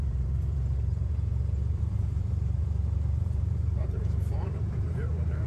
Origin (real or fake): fake